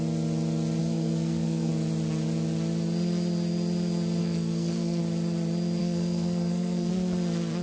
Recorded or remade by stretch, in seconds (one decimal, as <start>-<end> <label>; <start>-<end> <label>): 0.0-0.8 recorded; 0.8-1.7 remade; 1.7-4.2 recorded; 4.2-5.0 remade; 5.0-5.8 recorded; 5.8-6.9 remade; 6.9-7.6 recorded